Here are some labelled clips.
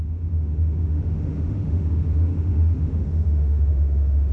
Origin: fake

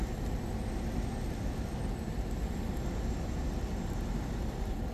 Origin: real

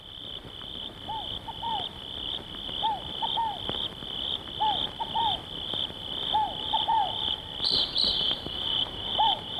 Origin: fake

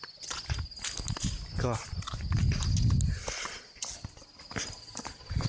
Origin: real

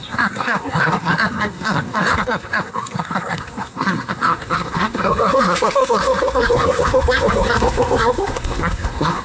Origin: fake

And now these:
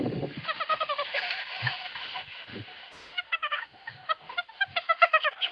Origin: fake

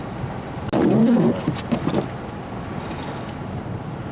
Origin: real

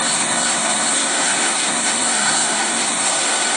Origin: fake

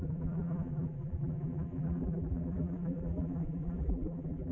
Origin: fake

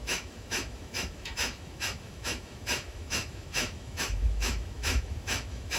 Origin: fake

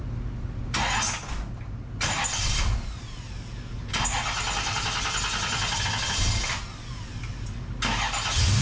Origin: real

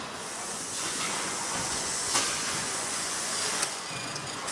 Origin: fake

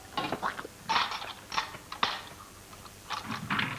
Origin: real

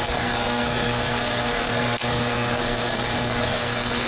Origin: fake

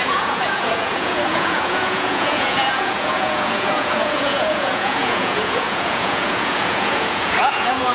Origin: fake